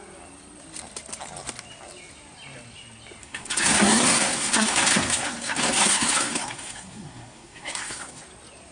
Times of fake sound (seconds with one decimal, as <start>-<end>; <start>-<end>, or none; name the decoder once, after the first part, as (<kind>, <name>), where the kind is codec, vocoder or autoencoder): 3.2-8.2 (codec, SNAC)